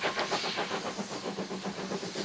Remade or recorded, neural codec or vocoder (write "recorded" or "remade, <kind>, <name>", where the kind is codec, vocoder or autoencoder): recorded